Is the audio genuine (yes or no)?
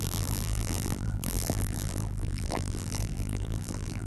no